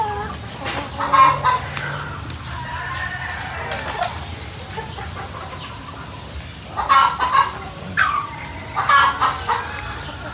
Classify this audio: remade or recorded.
recorded